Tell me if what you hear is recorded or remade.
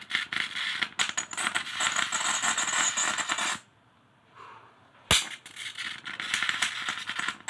recorded